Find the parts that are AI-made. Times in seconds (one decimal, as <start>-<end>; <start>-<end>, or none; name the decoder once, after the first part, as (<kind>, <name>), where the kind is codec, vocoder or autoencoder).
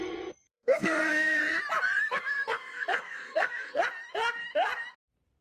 0.4-1.4 (codec, SNAC); 2.0-3.8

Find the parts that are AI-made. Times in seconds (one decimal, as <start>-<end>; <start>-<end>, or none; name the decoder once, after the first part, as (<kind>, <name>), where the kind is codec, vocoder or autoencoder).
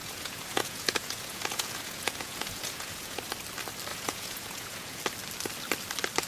0.0-3.2 (vocoder, Vocos); 3.9-5.0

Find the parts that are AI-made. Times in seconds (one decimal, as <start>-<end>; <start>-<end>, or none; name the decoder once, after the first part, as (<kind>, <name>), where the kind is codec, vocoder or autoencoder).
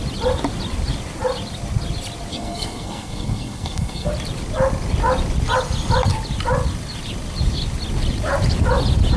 2.3-4.1 (codec, SNAC)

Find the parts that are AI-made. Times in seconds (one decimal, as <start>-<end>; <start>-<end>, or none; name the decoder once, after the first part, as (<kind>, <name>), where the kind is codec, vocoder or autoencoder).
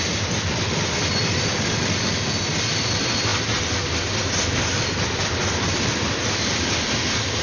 none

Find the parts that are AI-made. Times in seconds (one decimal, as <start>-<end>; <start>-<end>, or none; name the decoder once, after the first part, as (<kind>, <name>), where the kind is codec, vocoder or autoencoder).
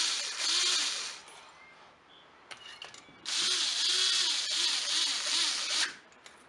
none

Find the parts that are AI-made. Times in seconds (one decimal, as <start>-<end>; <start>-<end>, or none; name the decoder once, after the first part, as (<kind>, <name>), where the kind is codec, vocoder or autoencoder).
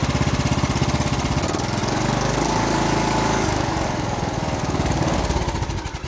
1.8-5.4 (codec, DAC)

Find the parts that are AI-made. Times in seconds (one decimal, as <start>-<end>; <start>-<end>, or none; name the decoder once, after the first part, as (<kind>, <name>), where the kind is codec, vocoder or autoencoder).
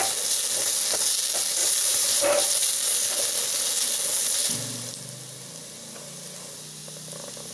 1.6-2.7 (vocoder, BigVGAN v2)